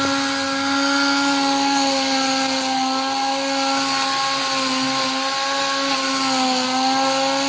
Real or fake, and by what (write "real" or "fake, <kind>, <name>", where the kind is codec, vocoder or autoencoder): real